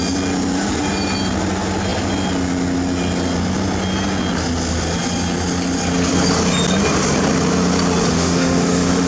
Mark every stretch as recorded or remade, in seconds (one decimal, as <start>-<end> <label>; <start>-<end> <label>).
0.0-8.1 recorded; 8.1-9.1 remade